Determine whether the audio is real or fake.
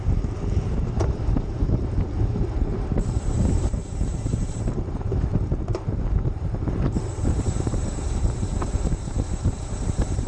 fake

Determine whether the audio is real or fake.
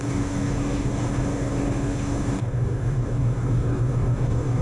fake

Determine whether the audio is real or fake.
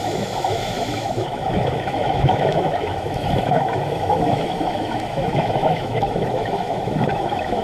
fake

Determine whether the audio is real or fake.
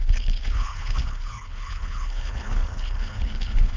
fake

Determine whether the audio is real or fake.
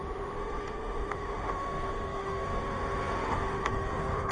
fake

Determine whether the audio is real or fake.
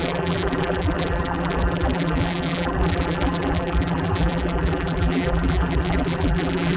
fake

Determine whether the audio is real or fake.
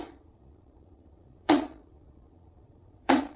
fake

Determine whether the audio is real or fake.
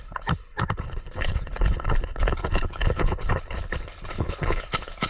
fake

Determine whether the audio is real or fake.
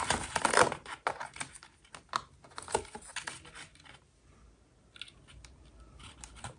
real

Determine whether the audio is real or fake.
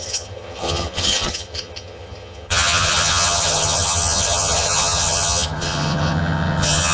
fake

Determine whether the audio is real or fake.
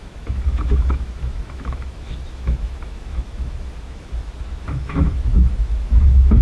fake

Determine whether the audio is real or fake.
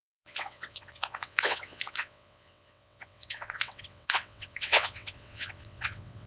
fake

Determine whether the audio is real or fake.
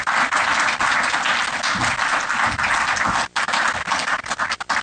real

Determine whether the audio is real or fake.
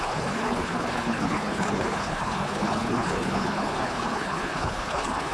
fake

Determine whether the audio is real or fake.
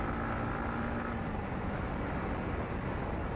real